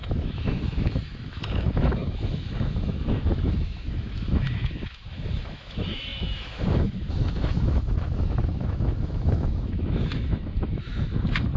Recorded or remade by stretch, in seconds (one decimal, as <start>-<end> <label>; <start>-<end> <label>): 0.0-11.6 remade